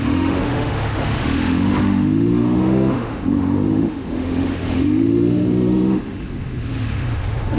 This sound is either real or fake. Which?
fake